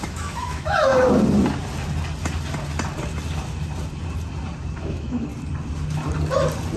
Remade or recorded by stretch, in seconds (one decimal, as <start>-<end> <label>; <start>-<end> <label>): 0.0-0.9 remade; 0.9-4.8 recorded; 4.8-5.3 remade; 5.3-6.8 recorded